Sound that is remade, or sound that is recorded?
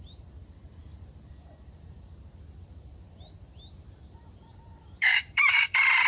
remade